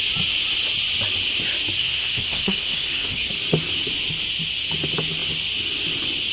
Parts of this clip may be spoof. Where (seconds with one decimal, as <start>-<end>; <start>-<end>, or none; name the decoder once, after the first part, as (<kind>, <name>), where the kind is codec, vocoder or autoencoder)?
1.8-3.3 (codec, SNAC)